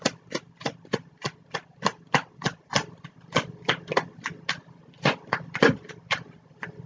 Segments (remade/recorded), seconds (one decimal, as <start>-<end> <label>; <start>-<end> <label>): 0.0-6.9 recorded